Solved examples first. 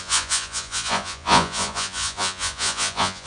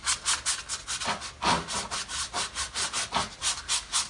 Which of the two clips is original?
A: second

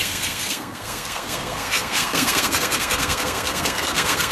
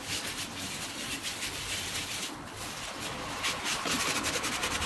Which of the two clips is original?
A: second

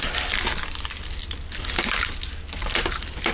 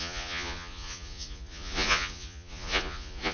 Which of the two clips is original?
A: first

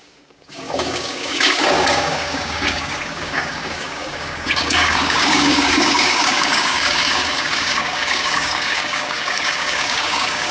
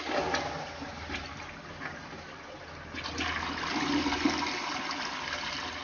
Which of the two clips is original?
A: second